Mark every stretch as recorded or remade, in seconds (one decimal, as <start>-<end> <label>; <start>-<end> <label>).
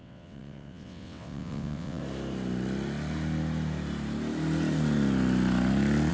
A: 0.0-2.0 remade; 2.0-6.1 recorded